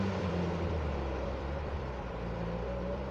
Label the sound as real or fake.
fake